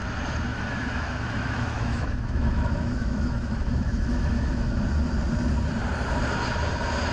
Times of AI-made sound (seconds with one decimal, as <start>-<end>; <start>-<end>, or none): 0.5-4.8